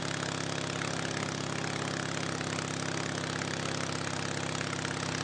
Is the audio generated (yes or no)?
no